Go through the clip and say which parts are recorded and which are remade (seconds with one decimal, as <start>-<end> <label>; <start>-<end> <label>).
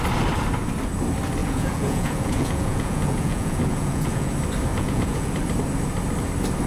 0.0-1.4 recorded; 1.4-4.3 remade; 4.3-4.7 recorded; 4.7-5.3 remade; 5.3-6.7 recorded